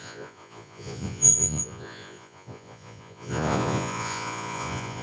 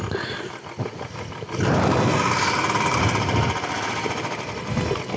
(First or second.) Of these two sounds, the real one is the second